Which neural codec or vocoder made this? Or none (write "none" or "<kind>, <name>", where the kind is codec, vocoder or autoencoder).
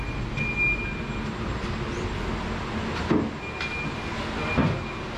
none